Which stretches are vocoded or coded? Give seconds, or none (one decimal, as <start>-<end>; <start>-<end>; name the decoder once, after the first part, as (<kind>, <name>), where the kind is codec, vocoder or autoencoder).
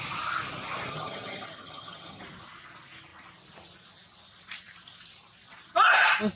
0.9-2.2 (vocoder, HiFi-GAN)